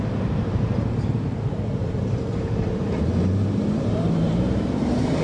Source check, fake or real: fake